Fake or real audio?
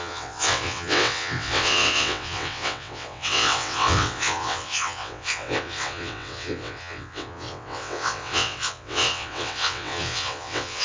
fake